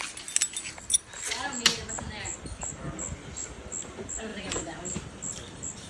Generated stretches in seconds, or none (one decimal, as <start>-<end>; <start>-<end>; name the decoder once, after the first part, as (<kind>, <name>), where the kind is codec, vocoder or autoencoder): 4.3-4.8 (vocoder, BigVGAN v2)